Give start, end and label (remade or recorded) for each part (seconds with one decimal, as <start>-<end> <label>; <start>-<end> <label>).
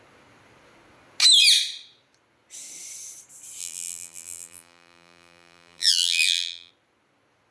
0.0-3.6 recorded; 3.6-6.7 remade; 6.7-7.5 recorded